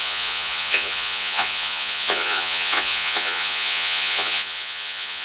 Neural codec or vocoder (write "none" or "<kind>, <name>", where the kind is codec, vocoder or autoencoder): vocoder, Vocos